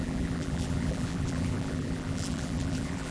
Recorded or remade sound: remade